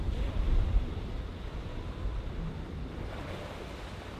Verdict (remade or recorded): recorded